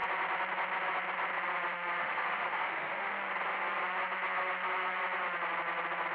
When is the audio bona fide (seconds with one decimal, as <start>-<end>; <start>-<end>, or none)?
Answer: 0.0-2.0; 3.1-6.1